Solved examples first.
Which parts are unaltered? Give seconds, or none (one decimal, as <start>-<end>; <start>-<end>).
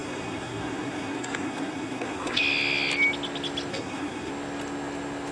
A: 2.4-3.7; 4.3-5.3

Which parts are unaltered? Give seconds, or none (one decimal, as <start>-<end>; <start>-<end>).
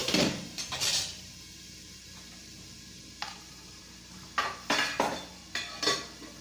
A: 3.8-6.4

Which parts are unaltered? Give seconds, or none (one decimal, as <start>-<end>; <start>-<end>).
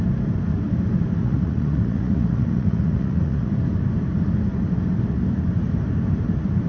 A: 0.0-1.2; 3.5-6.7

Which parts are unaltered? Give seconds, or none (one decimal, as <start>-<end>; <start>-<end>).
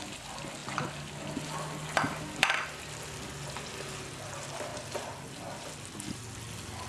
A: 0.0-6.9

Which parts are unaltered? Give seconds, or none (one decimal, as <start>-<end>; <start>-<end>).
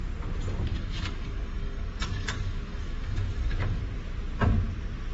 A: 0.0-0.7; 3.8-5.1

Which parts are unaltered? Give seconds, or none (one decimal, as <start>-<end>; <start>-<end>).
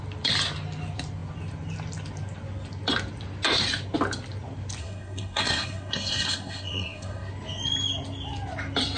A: 0.0-4.8; 7.3-9.0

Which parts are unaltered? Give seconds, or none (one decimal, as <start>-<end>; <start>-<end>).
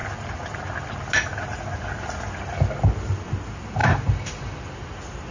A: 0.0-3.8; 4.6-5.3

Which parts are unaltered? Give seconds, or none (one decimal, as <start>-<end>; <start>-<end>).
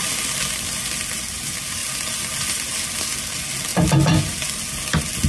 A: 0.0-5.3